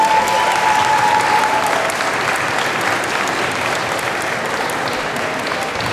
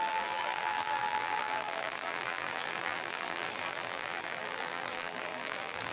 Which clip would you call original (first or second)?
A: first